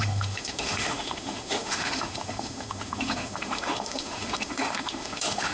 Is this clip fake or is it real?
fake